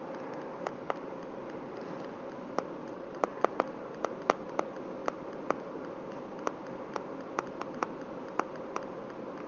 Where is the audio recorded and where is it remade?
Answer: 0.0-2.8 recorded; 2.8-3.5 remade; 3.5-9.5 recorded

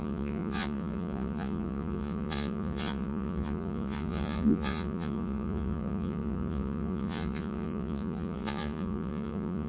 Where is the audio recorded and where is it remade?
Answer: 0.0-9.7 remade